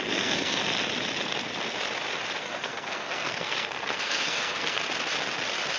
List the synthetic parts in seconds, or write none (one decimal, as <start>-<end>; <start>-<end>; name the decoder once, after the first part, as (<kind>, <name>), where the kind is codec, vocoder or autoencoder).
0.0-0.6 (codec, SNAC); 2.4-4.8